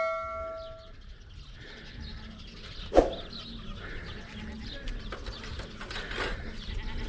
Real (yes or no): yes